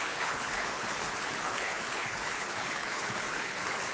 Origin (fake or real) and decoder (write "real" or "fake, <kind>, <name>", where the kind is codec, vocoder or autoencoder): fake, codec, HILCodec